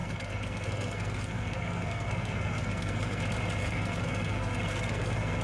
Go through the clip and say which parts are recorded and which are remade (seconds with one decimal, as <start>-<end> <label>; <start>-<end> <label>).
0.0-3.2 remade; 3.2-3.6 recorded; 3.6-5.4 remade